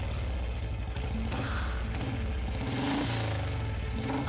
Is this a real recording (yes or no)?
yes